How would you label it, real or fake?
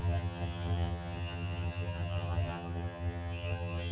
fake